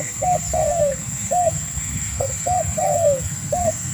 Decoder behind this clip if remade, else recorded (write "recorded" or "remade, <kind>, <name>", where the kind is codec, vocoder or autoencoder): remade, codec, SNAC